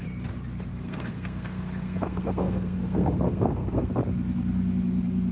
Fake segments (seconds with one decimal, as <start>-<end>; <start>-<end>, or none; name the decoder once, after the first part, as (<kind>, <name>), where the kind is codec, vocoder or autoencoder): 0.7-3.9 (codec, SNAC)